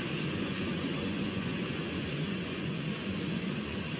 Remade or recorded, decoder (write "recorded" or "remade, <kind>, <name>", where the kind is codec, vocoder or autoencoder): remade, vocoder, Vocos